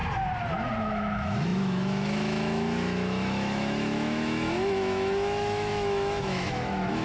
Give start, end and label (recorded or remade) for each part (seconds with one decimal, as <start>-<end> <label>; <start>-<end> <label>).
0.0-0.8 recorded; 0.8-7.0 remade